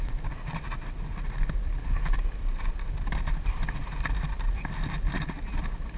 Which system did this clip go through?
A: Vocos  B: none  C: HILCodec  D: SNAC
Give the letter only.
B